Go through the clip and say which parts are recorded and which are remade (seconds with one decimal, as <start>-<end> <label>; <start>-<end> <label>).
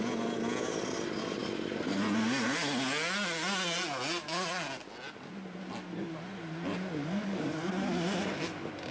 0.0-7.0 recorded; 7.0-7.7 remade; 7.7-8.9 recorded